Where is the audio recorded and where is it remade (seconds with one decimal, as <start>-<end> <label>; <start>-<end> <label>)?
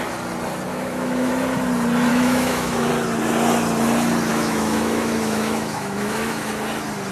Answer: 0.0-0.7 recorded; 0.7-1.3 remade; 1.3-2.1 recorded; 2.1-2.9 remade; 2.9-4.3 recorded; 4.3-6.5 remade; 6.5-7.1 recorded